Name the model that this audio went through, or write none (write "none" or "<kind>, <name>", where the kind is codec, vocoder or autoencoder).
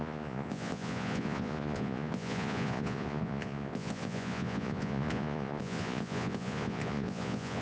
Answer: vocoder, Vocos